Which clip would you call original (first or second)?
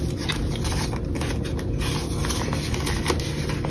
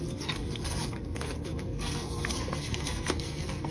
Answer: first